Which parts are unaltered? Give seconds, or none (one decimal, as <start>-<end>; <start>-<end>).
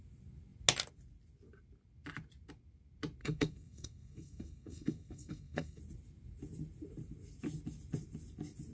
0.0-3.2; 5.8-8.7